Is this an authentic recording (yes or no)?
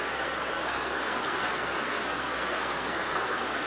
no